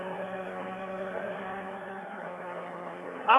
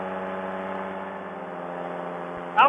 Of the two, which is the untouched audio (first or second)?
second